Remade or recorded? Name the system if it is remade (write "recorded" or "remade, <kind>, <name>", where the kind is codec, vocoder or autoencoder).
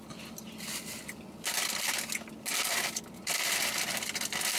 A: recorded